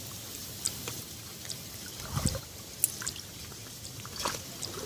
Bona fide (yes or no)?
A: yes